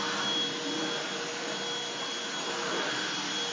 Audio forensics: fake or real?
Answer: real